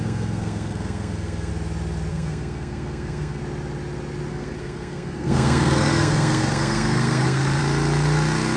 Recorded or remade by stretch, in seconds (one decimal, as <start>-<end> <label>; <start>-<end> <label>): 0.0-1.5 remade; 1.5-2.1 recorded; 2.1-3.4 remade; 3.4-4.3 recorded; 4.3-7.6 remade; 7.6-8.6 recorded